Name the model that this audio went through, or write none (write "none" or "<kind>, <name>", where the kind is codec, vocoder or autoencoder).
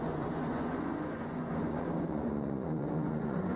vocoder, Vocos